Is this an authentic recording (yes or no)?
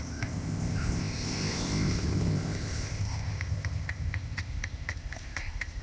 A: no